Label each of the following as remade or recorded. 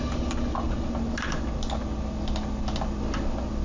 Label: recorded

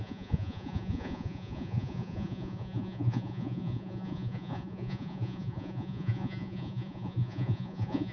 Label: remade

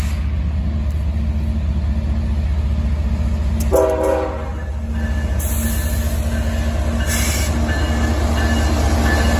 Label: recorded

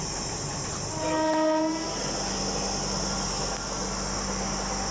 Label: recorded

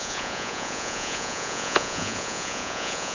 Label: remade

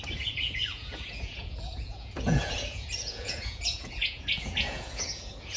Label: remade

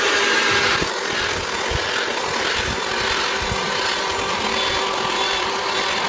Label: recorded